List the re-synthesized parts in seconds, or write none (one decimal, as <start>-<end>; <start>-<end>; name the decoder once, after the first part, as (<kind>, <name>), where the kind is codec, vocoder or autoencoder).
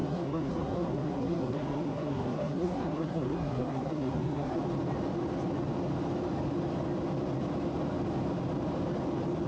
0.0-4.6 (codec, SNAC)